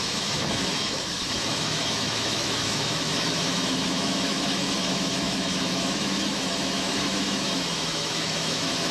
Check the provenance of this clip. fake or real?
fake